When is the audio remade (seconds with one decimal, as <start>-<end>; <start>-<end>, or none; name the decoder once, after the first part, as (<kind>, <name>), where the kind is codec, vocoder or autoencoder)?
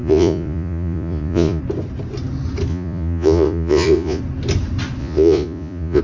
0.0-1.6 (vocoder, Vocos); 2.7-4.2; 5.0-6.0